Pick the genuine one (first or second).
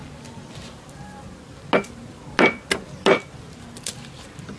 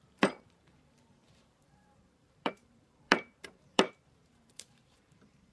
first